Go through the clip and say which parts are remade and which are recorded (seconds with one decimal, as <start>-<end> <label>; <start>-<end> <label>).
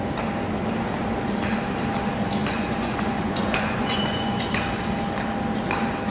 0.0-2.4 recorded; 2.4-4.6 remade; 4.6-6.1 recorded